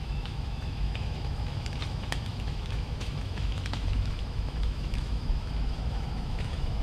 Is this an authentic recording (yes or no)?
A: no